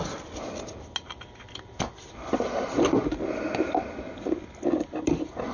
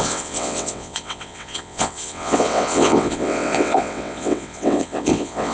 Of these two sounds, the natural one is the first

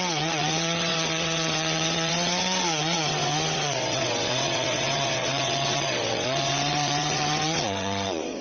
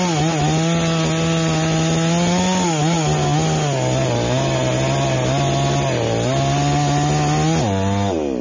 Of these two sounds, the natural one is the second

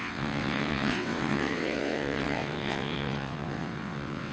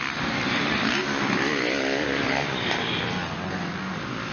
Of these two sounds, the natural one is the second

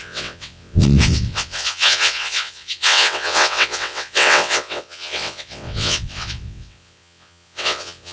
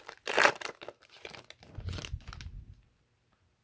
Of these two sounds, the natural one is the second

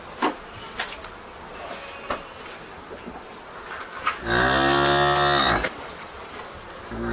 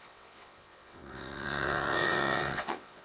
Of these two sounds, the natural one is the first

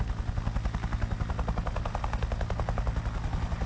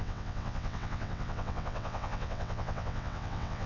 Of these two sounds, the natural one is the first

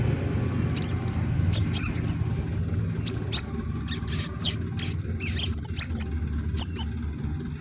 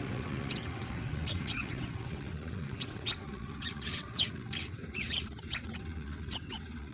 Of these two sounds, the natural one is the first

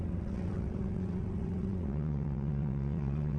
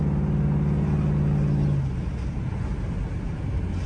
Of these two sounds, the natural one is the second